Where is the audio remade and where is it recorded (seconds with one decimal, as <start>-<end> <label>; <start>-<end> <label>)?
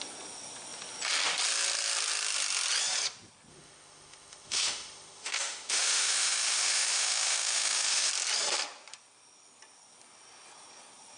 0.0-3.5 recorded; 3.5-8.1 remade; 8.1-11.2 recorded